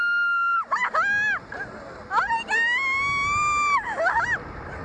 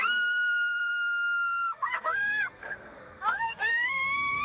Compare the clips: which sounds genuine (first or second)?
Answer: first